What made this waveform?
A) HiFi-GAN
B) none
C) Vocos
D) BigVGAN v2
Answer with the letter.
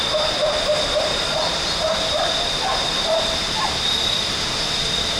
D